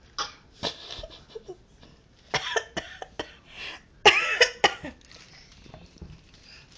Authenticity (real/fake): real